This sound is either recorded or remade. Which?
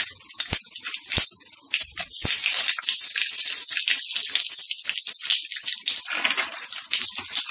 recorded